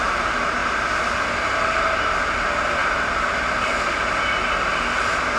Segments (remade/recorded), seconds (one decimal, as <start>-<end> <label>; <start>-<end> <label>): 0.0-5.4 recorded